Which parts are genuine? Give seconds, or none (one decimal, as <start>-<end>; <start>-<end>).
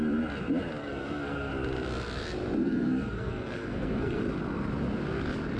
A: 0.0-0.8; 1.5-2.6; 4.2-5.6